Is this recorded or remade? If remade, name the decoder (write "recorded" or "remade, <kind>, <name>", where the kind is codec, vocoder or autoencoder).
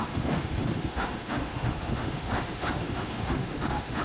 remade, autoencoder, DAC-VAE